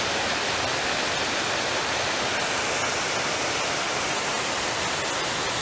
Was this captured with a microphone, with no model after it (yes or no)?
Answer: yes